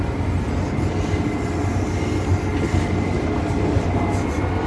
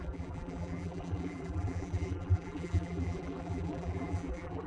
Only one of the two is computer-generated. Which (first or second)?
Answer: second